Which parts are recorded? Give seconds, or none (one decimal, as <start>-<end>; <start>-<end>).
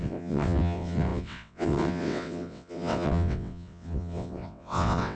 none